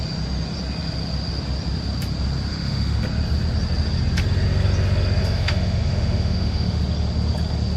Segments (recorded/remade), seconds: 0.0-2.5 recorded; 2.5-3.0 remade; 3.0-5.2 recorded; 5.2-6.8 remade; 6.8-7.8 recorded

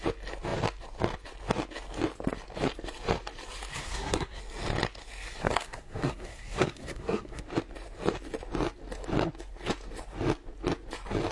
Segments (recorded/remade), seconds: 0.0-3.7 recorded; 3.7-4.4 remade; 4.4-5.4 recorded; 5.4-7.4 remade; 7.4-11.3 recorded